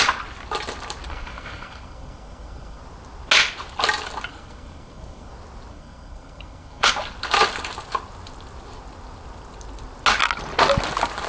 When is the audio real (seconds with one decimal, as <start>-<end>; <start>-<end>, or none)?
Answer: 0.0-1.1; 2.8-4.3; 5.3-5.7; 6.9-11.3